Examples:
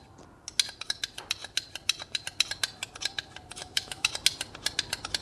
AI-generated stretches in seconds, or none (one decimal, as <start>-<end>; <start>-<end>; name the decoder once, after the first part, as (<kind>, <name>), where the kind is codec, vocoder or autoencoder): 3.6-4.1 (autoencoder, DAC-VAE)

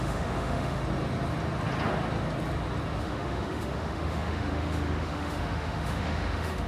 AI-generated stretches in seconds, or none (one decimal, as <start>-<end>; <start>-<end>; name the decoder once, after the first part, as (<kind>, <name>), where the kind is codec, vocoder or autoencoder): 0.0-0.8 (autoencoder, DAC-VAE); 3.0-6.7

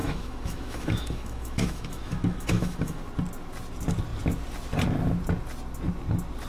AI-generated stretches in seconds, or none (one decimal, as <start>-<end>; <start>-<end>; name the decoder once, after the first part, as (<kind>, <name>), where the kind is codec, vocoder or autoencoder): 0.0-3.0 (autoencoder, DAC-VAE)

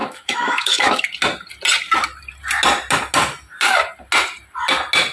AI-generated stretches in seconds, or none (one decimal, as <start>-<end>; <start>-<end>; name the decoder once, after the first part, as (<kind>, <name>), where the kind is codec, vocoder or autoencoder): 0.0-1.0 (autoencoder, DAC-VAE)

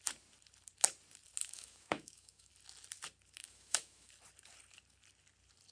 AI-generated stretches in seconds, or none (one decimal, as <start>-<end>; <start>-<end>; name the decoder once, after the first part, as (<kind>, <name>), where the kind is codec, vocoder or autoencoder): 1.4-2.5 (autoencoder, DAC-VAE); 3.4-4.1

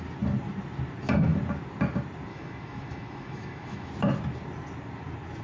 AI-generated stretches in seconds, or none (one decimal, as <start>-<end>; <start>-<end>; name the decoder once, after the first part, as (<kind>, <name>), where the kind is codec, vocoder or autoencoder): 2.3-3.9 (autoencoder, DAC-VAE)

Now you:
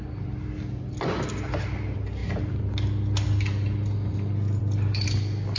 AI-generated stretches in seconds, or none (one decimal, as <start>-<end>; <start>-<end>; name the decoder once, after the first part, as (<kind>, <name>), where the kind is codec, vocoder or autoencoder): none

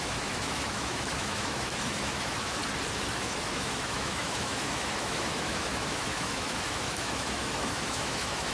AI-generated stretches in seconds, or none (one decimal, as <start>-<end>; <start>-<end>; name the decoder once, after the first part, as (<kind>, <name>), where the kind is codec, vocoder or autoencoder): 0.0-2.6 (autoencoder, DAC-VAE); 3.1-8.5